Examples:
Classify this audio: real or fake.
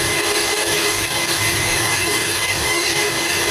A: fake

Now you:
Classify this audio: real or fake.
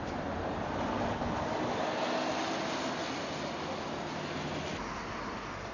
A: real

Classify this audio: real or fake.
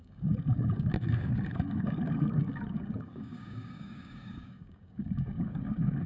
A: fake